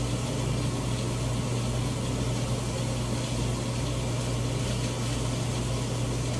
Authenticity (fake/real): real